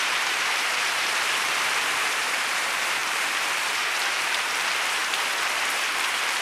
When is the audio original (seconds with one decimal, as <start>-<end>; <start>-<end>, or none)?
5.0-5.9